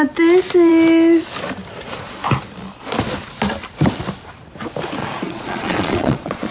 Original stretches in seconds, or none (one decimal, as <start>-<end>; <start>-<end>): 0.0-5.0

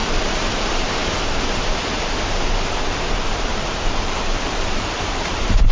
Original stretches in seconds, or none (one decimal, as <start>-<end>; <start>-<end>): 1.0-3.3